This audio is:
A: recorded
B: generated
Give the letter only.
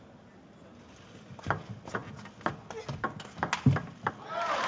A